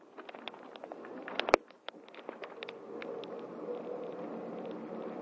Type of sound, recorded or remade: recorded